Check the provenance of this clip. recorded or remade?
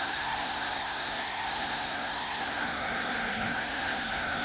remade